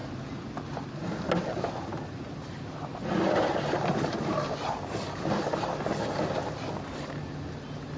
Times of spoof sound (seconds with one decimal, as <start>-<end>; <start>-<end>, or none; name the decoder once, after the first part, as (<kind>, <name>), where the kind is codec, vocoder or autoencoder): none